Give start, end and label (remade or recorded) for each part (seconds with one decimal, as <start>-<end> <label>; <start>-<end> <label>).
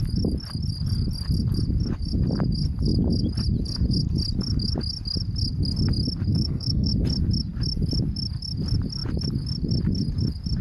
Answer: 0.0-6.3 recorded; 6.3-6.9 remade; 6.9-10.6 recorded